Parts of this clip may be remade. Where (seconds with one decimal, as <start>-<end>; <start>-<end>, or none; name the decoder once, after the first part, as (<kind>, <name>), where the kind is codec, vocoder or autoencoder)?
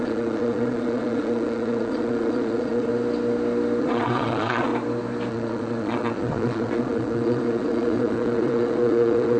0.0-2.9 (vocoder, Vocos); 3.8-4.7; 5.3-9.4